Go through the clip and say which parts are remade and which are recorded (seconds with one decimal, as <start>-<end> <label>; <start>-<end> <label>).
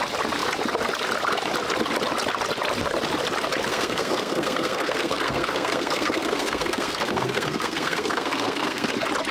0.0-3.7 recorded; 3.7-8.9 remade; 8.9-9.3 recorded